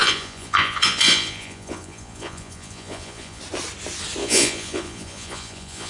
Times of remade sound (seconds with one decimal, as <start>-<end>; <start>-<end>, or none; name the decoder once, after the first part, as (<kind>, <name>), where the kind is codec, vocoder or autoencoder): 0.0-3.4 (vocoder, Vocos); 4.2-5.9